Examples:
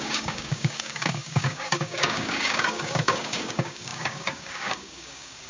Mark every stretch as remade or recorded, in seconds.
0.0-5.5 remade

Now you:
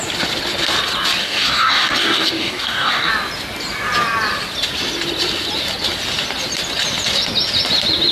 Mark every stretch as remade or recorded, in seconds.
0.0-1.2 recorded; 1.2-3.1 remade; 3.1-8.1 recorded

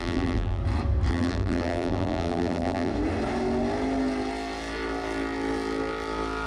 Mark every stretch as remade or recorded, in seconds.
0.0-0.6 remade; 0.6-1.1 recorded; 1.1-2.9 remade; 2.9-6.5 recorded

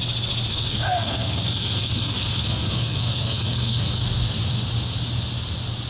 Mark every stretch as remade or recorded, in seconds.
0.0-0.5 recorded; 0.5-4.0 remade; 4.0-5.9 recorded

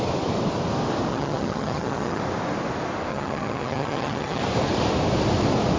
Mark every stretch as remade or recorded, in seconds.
0.0-1.1 recorded; 1.1-2.2 remade; 2.2-3.1 recorded; 3.1-4.4 remade; 4.4-5.8 recorded

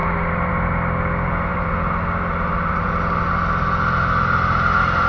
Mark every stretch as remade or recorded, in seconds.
0.0-0.5 remade; 0.5-1.5 recorded; 1.5-2.9 remade; 2.9-5.1 recorded

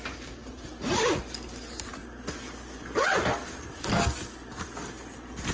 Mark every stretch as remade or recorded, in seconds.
0.0-5.5 recorded